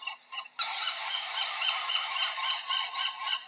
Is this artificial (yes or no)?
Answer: no